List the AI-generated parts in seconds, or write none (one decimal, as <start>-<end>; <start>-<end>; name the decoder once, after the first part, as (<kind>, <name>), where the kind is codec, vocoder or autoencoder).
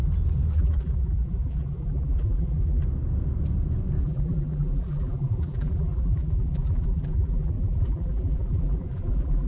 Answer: 0.5-2.8 (vocoder, BigVGAN v2); 4.0-9.5